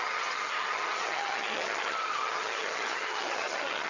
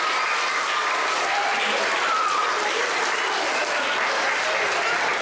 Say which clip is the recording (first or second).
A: second